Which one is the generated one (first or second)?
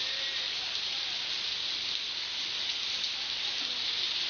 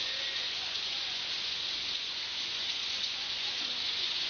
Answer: second